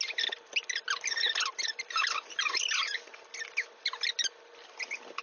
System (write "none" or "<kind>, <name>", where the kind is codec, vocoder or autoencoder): none